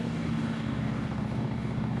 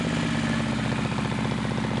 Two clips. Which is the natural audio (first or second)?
second